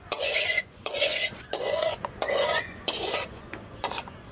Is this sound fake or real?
fake